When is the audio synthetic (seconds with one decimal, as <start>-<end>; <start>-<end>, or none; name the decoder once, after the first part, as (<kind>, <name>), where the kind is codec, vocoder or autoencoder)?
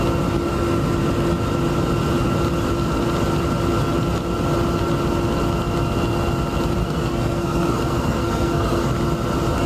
6.8-8.9 (codec, SNAC)